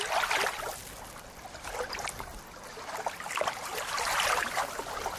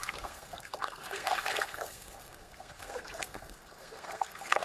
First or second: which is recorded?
first